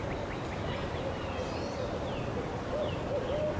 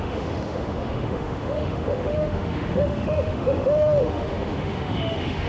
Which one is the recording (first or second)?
first